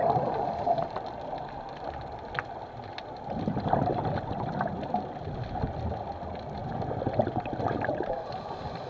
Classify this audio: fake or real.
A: fake